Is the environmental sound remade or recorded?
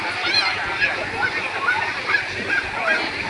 recorded